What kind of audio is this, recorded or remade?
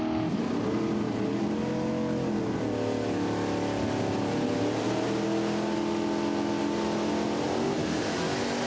recorded